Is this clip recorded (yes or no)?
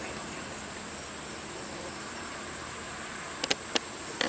yes